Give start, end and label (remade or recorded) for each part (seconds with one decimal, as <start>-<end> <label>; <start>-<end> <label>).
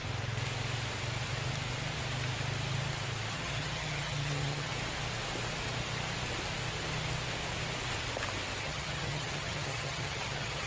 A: 0.0-3.3 recorded; 3.3-4.7 remade; 4.7-8.6 recorded; 8.6-10.7 remade